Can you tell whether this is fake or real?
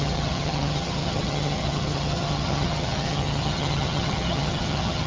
fake